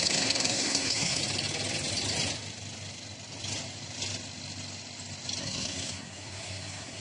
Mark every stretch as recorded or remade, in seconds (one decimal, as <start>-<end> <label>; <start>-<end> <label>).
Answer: 0.0-1.2 remade; 1.2-5.4 recorded; 5.4-7.0 remade